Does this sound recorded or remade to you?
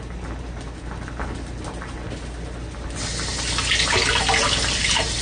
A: recorded